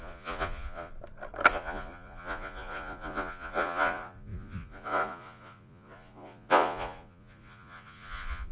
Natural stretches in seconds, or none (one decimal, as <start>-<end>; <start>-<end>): 0.9-1.5